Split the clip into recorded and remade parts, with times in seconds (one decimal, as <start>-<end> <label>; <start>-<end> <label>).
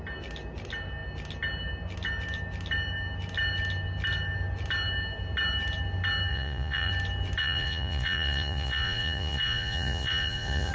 0.0-6.3 recorded; 6.3-6.9 remade; 6.9-7.4 recorded; 7.4-10.7 remade